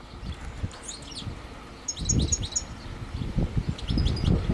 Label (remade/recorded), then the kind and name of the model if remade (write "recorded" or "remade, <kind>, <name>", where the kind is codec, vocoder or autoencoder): recorded